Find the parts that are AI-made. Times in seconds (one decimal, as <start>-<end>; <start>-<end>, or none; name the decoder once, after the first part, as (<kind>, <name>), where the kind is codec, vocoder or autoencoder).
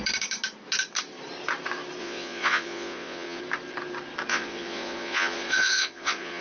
2.0-3.4 (vocoder, Vocos); 4.3-6.4